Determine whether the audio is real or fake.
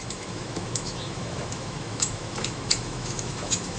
fake